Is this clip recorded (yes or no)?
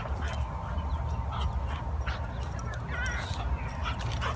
yes